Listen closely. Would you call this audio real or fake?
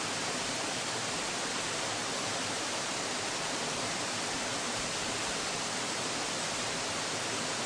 real